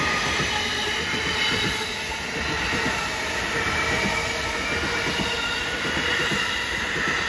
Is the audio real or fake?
real